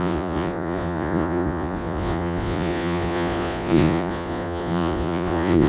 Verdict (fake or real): fake